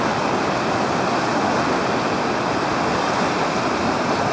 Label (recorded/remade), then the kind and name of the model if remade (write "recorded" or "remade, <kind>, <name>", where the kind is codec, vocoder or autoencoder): recorded